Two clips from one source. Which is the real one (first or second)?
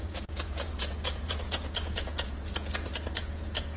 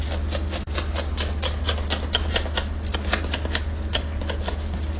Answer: second